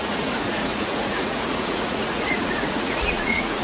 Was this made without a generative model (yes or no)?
no